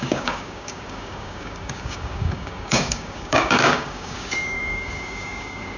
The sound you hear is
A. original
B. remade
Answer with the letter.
B